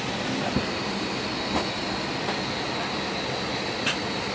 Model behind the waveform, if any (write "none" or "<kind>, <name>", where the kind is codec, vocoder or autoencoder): none